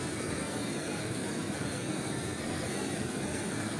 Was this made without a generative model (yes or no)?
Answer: no